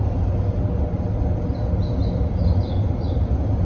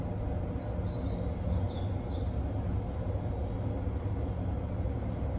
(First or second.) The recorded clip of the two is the second